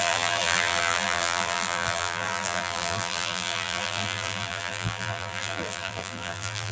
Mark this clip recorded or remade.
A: remade